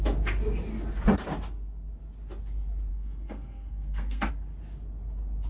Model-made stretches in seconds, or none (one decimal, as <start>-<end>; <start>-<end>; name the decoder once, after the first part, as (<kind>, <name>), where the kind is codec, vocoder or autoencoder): 2.9-4.3 (codec, SNAC)